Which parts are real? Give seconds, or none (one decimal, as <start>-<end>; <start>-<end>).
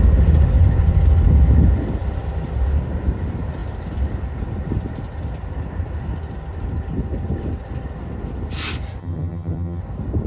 0.0-9.0; 9.8-10.3